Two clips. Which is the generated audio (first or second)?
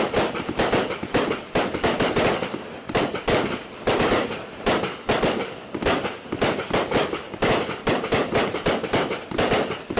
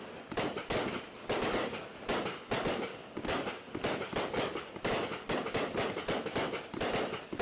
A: first